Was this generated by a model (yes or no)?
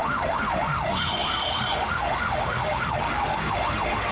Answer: yes